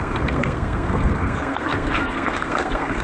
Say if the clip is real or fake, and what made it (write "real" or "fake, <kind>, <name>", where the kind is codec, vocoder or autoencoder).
fake, codec, SNAC